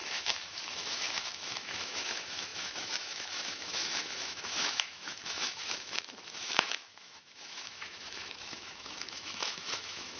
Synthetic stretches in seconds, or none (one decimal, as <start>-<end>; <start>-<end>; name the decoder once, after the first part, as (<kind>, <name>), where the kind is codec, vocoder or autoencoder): 0.0-10.2 (autoencoder, DAC-VAE)